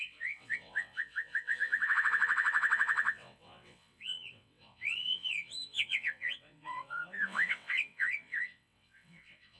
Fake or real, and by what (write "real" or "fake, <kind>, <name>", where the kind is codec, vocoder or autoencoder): fake, vocoder, WaveNeXt